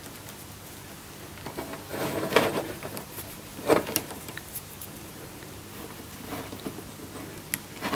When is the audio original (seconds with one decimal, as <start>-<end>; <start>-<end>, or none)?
0.0-1.9; 5.6-8.0